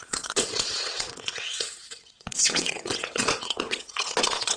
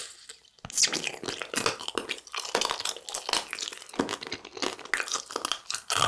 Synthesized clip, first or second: first